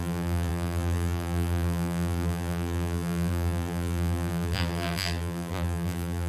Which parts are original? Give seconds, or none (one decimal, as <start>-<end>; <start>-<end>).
none